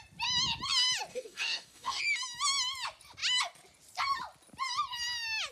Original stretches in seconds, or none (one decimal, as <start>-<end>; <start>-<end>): 0.0-1.1; 2.0-5.5